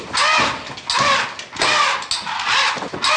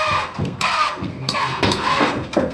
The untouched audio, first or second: first